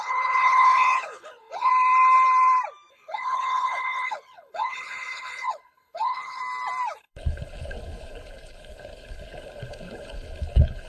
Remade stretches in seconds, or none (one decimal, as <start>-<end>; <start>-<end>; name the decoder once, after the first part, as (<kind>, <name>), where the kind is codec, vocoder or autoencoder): 0.0-1.7 (codec, HILCodec); 2.9-6.4; 7.0-10.9